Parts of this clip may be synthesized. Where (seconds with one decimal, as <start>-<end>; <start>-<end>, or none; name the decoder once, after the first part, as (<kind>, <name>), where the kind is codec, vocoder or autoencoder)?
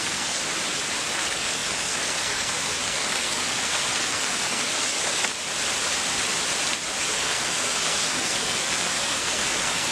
0.0-0.4 (codec, SNAC); 1.0-5.4; 7.0-9.9